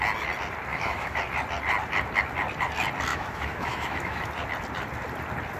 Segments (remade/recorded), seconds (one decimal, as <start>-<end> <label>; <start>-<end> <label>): 0.0-0.7 recorded; 0.7-1.2 remade; 1.2-3.1 recorded; 3.1-4.3 remade; 4.3-5.6 recorded